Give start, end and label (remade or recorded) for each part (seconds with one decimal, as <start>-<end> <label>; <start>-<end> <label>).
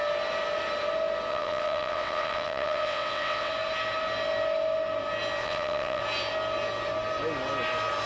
0.0-1.3 recorded; 1.3-3.5 remade; 3.5-5.4 recorded; 5.4-6.0 remade; 6.0-8.1 recorded